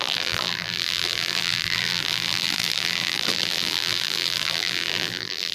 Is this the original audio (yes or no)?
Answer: no